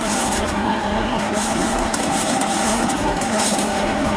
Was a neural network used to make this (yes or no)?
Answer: yes